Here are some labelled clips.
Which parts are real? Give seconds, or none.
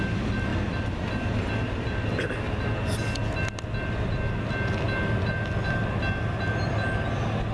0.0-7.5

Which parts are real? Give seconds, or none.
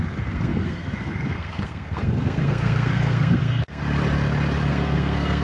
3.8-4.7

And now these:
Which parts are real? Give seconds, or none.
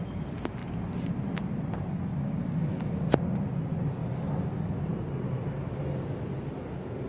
0.0-7.1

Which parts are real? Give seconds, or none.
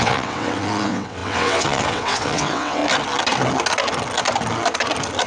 2.8-5.3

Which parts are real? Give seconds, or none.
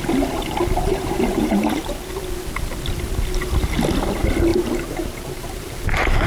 0.0-0.9; 2.1-6.3